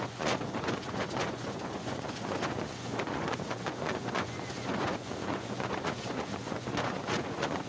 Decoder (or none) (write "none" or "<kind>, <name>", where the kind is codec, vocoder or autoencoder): vocoder, Vocos